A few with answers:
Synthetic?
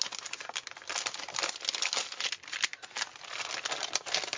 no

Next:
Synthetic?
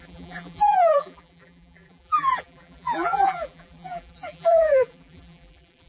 yes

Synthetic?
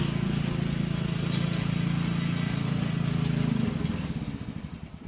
no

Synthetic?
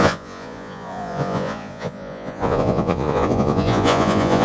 yes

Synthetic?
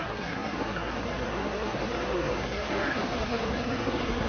yes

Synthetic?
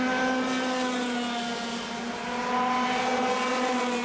no